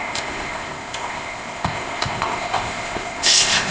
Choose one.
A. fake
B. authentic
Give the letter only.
A